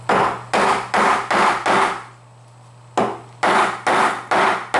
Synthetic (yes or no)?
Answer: no